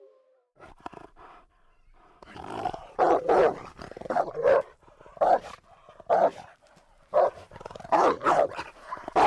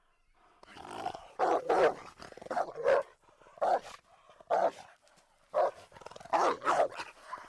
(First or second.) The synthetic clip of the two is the first